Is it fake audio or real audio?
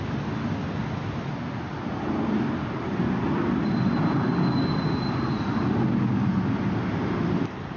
real